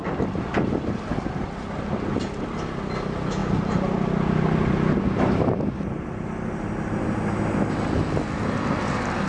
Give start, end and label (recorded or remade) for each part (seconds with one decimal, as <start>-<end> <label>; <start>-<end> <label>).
0.0-9.3 recorded